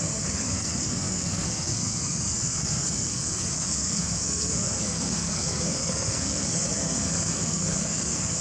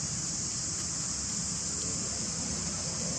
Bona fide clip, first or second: second